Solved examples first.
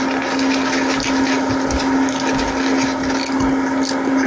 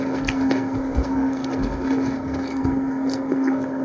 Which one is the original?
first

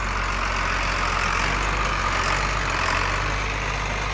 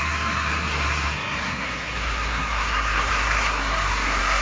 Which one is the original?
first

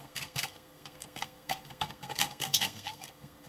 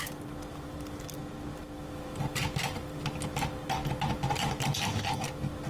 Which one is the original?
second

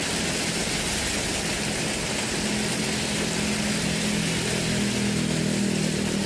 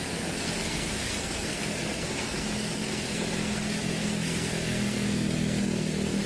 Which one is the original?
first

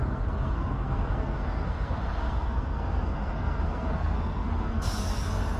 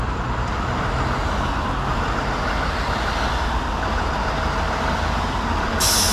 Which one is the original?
second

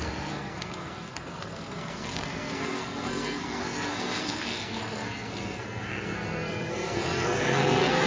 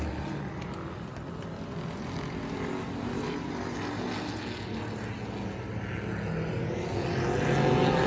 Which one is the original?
second